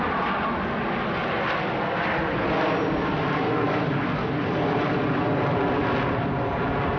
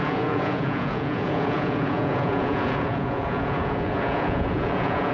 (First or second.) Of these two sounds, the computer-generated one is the second